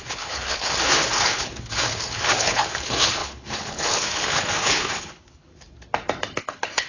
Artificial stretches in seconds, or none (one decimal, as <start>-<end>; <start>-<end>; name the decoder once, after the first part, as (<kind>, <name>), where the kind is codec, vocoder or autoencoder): 0.0-5.5 (codec, HILCodec); 6.4-6.9